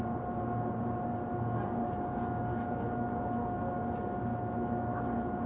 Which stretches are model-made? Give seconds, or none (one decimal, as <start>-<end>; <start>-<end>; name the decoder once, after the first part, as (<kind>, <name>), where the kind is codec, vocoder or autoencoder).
2.5-3.2 (autoencoder, DAC-VAE); 4.3-5.0